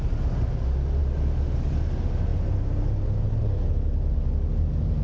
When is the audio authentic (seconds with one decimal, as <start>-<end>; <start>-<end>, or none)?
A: 0.0-5.0